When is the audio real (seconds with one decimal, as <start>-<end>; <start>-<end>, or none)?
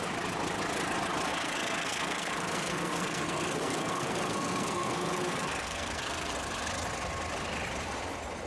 0.0-1.3; 6.3-8.5